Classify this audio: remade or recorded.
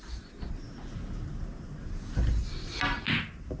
recorded